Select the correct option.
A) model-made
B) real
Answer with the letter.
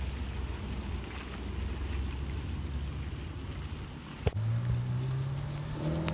B